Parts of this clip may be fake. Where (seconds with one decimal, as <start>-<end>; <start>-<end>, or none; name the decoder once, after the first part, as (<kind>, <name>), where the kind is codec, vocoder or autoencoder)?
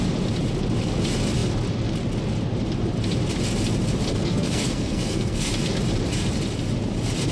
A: 4.1-5.5 (codec, SNAC)